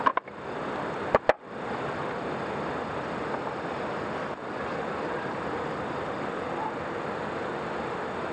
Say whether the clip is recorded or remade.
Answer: recorded